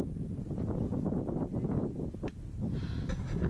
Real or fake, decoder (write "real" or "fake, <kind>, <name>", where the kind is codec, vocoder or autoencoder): real